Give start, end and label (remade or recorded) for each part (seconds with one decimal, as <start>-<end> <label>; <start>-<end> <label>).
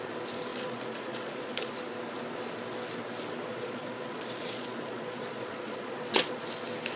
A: 0.0-0.5 recorded; 0.5-1.8 remade; 1.8-3.5 recorded; 3.5-6.4 remade; 6.4-7.0 recorded